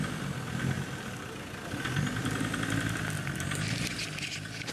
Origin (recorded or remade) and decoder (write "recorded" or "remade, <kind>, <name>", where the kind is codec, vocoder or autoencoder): recorded